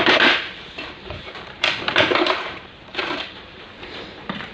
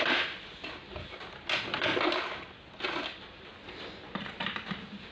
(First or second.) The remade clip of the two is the first